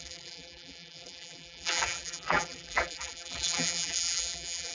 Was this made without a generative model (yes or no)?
no